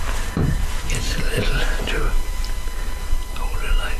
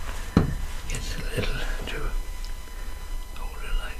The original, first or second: second